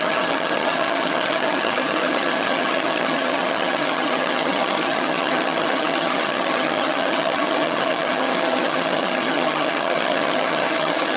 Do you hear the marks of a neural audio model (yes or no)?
yes